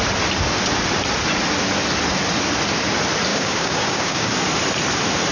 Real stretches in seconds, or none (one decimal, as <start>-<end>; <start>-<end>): 0.0-3.3; 4.3-5.3